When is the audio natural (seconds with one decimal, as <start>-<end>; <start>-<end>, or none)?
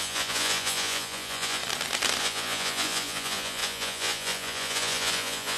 1.6-2.2